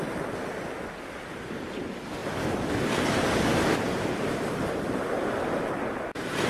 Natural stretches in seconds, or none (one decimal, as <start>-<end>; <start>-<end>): 0.0-6.5